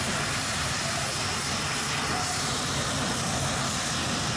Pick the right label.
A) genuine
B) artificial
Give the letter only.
A